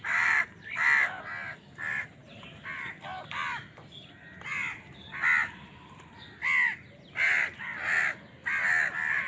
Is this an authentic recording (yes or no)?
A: yes